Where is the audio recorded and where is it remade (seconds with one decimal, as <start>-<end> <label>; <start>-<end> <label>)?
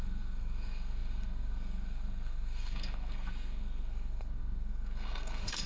0.0-5.7 remade